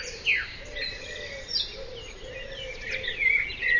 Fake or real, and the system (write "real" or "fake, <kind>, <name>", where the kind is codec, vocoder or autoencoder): real